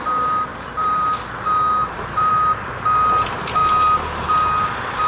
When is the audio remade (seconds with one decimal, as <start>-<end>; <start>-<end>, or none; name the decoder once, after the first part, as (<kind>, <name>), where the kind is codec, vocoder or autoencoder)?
0.5-1.2 (vocoder, BigVGAN v2); 1.8-2.3